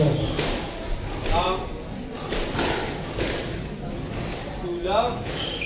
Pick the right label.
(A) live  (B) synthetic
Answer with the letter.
A